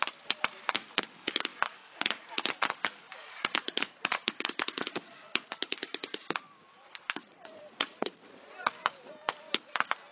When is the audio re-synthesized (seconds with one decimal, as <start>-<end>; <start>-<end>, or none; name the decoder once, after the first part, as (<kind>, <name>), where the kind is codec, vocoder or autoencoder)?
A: 3.2-5.4 (vocoder, Vocos); 5.9-6.4; 7.2-8.7

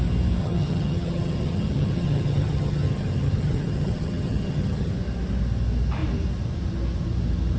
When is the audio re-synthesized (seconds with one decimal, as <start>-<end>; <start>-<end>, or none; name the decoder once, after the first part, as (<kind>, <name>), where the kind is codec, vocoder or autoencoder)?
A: 0.4-4.9 (vocoder, HiFi-GAN)

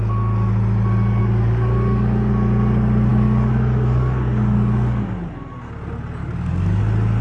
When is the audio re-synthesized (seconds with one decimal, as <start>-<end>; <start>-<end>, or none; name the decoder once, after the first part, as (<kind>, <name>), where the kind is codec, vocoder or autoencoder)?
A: 1.2-2.3 (codec, DAC); 3.1-5.3; 6.2-6.8

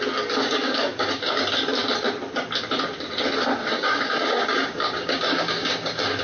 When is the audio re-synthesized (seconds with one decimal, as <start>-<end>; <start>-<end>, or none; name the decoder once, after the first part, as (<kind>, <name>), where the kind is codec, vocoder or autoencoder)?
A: 0.4-1.4 (codec, DAC); 3.6-6.2